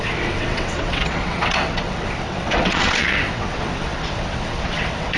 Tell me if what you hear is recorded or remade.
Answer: remade